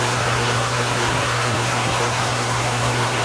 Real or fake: fake